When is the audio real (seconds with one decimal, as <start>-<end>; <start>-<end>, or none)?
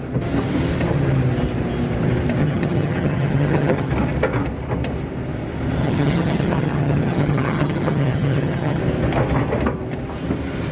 0.0-2.4; 3.9-5.8; 8.8-10.7